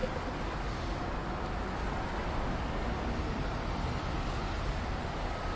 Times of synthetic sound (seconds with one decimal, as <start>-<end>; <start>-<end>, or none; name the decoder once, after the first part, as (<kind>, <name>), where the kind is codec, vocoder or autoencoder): none